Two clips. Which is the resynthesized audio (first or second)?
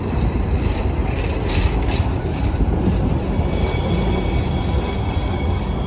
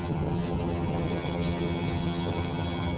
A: second